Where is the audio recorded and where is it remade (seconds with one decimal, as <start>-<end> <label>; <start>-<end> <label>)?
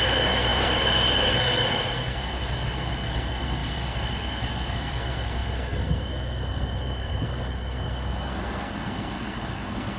0.0-10.0 remade